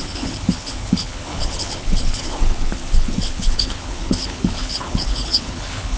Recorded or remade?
remade